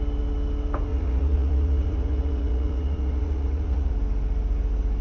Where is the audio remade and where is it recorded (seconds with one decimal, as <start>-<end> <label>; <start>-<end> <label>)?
0.0-0.9 recorded; 0.9-3.9 remade; 3.9-5.0 recorded